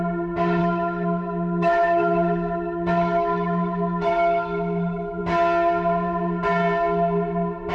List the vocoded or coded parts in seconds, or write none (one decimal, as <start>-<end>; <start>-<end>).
0.6-5.2